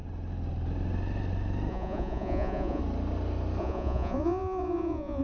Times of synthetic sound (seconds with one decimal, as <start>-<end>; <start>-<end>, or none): 1.7-2.8; 3.6-5.2